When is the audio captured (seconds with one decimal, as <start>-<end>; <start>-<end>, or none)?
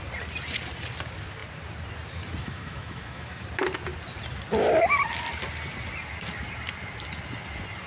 0.0-2.4; 3.4-7.9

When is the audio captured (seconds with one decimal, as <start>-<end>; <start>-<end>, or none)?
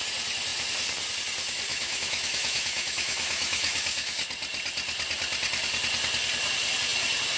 0.0-1.7; 4.1-7.4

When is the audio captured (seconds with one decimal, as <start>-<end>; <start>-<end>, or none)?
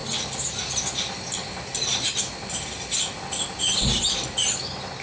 0.0-5.0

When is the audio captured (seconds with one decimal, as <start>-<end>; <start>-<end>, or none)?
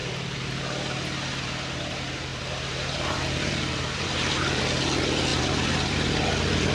0.6-2.3; 4.6-5.3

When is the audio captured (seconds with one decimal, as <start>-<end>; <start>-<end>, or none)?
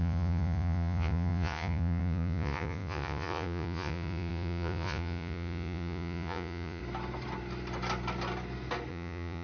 6.8-8.9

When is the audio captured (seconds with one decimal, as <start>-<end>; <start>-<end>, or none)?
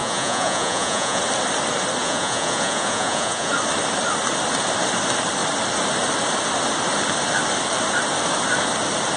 1.2-2.0; 3.5-9.2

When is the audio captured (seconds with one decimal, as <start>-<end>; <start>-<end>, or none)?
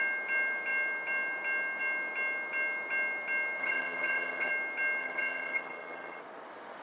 0.0-3.6; 4.5-5.0; 6.2-6.8